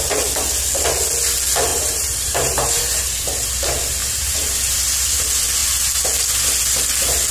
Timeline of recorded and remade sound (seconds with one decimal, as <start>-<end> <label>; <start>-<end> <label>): 0.0-1.7 recorded; 1.7-3.5 remade; 3.5-4.0 recorded; 4.0-4.8 remade; 4.8-7.3 recorded